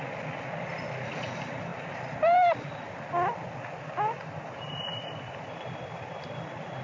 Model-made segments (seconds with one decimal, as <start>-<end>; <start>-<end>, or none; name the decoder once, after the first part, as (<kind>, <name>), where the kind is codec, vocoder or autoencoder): 1.7-2.7 (vocoder, BigVGAN v2)